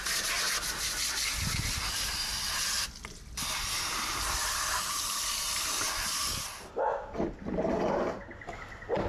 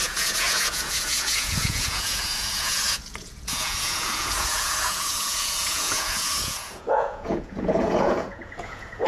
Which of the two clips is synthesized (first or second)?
second